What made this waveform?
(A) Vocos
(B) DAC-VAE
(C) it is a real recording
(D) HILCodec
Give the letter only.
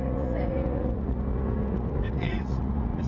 A